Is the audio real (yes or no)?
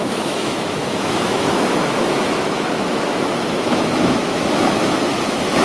no